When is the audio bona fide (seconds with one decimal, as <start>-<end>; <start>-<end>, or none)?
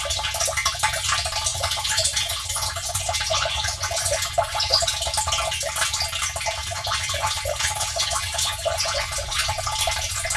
0.0-1.5; 4.9-6.6; 9.6-10.4